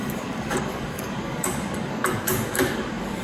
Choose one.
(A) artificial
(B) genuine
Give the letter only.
A